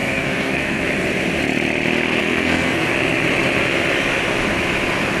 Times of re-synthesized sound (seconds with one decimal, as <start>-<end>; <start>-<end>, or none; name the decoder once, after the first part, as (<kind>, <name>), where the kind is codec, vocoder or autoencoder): 0.0-0.8 (codec, SNAC); 2.2-2.9